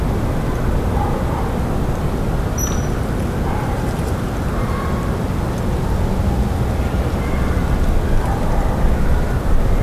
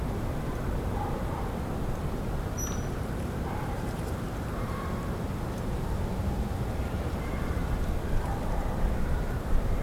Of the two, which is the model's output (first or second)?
second